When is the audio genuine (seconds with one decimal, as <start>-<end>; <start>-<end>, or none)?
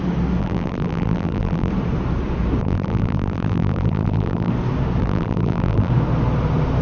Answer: 0.0-0.4; 1.7-2.6; 4.5-5.0; 5.9-6.8